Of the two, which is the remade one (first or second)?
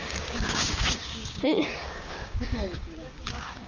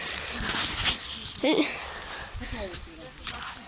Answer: first